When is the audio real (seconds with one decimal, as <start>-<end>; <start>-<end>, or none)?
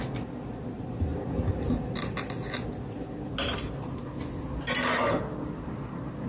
0.0-6.3